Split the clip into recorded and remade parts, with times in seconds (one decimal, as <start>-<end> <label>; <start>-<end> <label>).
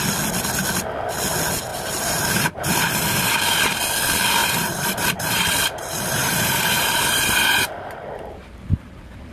0.0-1.7 recorded; 1.7-3.6 remade; 3.6-4.4 recorded; 4.4-7.7 remade; 7.7-9.3 recorded